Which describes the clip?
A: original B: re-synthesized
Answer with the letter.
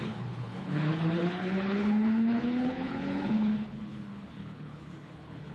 B